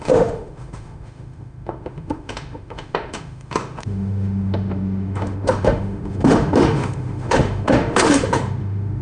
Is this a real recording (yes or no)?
no